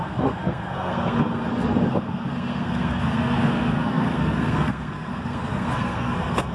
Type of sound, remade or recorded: remade